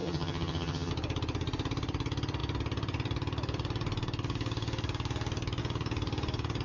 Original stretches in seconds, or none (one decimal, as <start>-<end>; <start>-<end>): 0.9-6.6